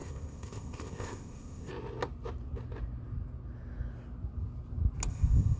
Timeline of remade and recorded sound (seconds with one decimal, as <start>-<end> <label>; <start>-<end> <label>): 0.0-1.7 remade; 1.7-5.1 recorded; 5.1-5.6 remade